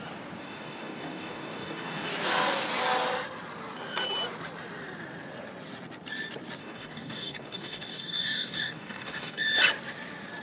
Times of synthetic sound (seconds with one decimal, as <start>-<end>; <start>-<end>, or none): 0.4-2.1; 6.6-9.4